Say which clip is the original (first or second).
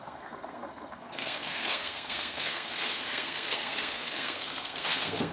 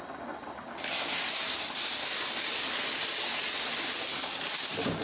second